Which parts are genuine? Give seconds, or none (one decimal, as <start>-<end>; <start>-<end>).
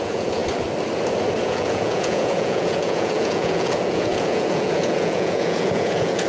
0.4-1.4